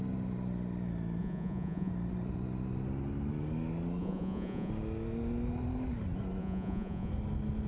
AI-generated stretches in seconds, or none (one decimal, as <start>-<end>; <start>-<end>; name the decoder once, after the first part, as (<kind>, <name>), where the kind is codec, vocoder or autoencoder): 1.2-1.9 (vocoder, Vocos); 4.0-4.7; 6.4-7.1